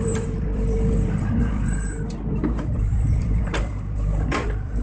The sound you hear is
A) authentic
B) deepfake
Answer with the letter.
B